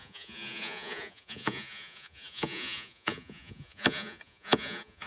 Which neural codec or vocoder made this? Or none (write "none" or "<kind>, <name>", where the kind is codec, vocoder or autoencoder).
vocoder, Vocos